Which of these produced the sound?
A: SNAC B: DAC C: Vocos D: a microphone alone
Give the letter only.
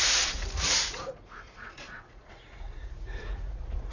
C